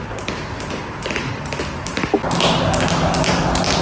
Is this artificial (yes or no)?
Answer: no